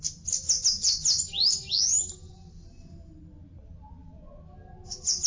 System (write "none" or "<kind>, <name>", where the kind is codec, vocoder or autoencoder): none